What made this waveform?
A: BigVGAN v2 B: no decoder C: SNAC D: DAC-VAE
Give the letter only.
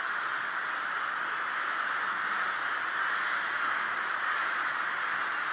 B